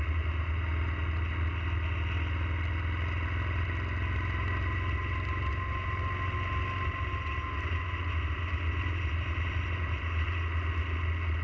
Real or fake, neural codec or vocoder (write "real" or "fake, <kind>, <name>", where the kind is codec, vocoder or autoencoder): real